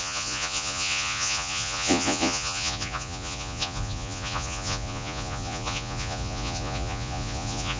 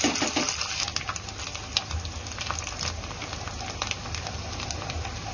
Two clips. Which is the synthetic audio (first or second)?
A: first